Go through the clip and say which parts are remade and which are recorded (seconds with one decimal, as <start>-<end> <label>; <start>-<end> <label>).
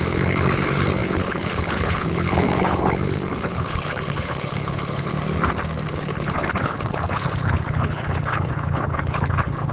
0.0-5.1 remade; 5.1-5.9 recorded; 5.9-9.7 remade